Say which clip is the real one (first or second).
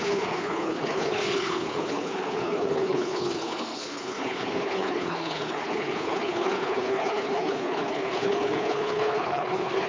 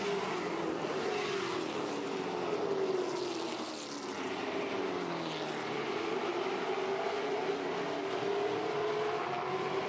second